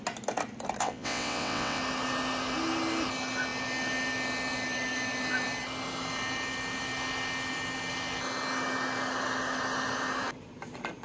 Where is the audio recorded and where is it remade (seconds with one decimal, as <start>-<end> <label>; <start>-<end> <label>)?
0.0-0.8 recorded; 0.8-1.8 remade; 1.8-11.0 recorded

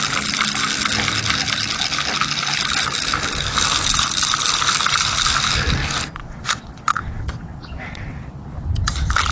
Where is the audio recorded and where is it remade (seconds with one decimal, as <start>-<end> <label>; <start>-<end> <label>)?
0.0-6.2 recorded; 6.2-8.3 remade; 8.3-9.3 recorded

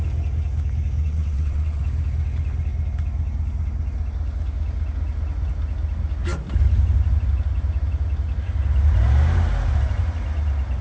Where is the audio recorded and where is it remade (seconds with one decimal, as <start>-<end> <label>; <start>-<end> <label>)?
0.0-1.0 recorded; 1.0-1.8 remade; 1.8-10.8 recorded

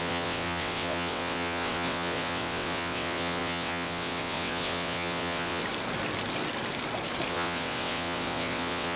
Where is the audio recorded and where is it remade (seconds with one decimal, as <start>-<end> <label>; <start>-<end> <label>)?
0.0-5.6 remade; 5.6-7.3 recorded; 7.3-9.0 remade

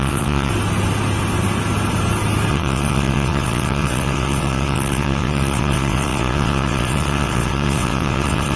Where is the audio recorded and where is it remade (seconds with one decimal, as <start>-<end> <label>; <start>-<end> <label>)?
0.0-0.5 remade; 0.5-2.5 recorded; 2.5-8.6 remade